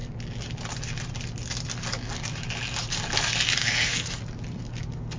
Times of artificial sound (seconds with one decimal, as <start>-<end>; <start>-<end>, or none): 3.6-4.2